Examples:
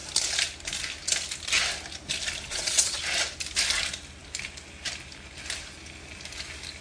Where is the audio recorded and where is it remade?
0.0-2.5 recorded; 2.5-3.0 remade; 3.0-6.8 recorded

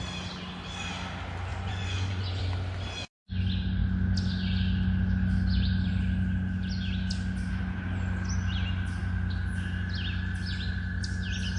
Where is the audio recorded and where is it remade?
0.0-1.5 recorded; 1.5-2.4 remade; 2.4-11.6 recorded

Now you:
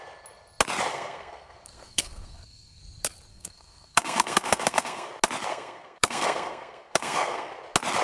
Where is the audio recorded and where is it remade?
0.0-0.9 recorded; 0.9-2.8 remade; 2.8-3.3 recorded; 3.3-5.1 remade; 5.1-5.5 recorded; 5.5-7.5 remade; 7.5-8.0 recorded